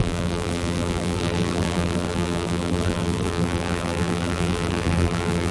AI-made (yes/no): yes